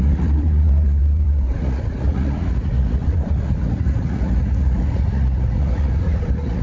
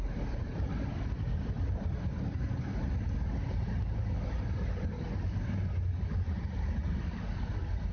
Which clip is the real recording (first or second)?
second